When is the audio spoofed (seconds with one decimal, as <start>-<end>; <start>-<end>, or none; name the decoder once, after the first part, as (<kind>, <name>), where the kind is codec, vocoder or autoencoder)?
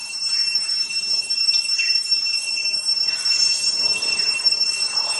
0.0-1.2 (vocoder, BigVGAN v2)